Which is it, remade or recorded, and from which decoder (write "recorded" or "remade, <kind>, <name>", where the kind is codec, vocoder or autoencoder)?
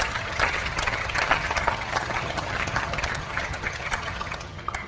remade, vocoder, HiFi-GAN